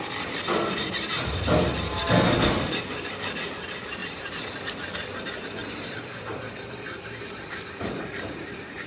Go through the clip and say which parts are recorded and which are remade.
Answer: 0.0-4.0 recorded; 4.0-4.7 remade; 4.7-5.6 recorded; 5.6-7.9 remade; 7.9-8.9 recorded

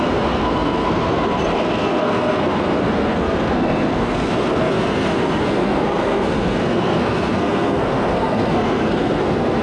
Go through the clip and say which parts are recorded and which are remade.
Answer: 0.0-9.6 remade

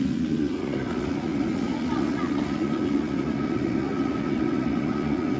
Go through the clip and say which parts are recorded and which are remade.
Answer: 0.0-5.4 remade

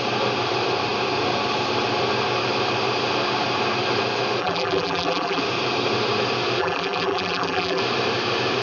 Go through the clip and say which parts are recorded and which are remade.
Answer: 0.0-4.4 recorded; 4.4-5.4 remade; 5.4-6.6 recorded; 6.6-7.8 remade; 7.8-8.6 recorded

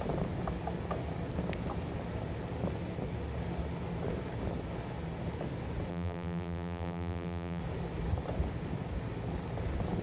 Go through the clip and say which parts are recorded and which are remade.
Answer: 0.0-5.9 recorded; 5.9-7.6 remade; 7.6-10.0 recorded

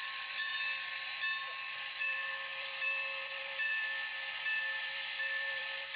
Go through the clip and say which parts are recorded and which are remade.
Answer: 0.0-0.5 remade; 0.5-1.9 recorded; 1.9-4.1 remade; 4.1-4.8 recorded; 4.8-6.0 remade